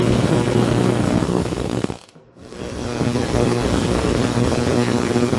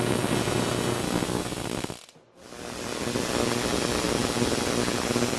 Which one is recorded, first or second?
second